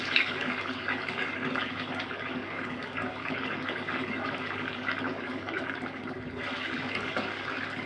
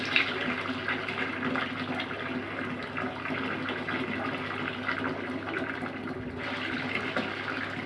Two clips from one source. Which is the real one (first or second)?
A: second